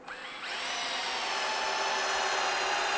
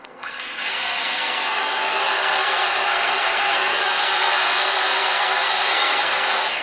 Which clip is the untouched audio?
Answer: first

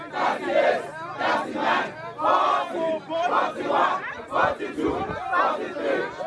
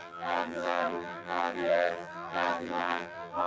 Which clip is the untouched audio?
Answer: first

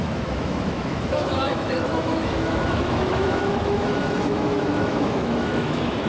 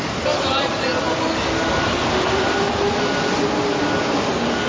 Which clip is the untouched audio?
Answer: second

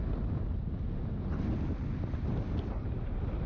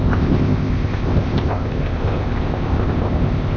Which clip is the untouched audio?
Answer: first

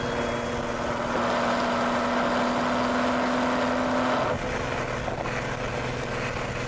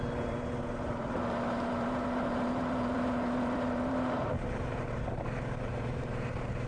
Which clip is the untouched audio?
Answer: first